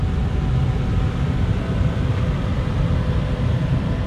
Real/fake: real